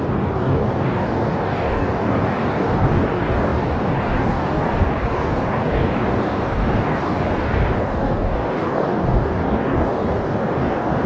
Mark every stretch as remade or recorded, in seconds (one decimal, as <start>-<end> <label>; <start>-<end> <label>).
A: 0.0-11.1 remade